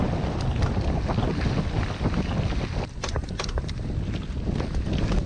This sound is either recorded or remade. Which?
recorded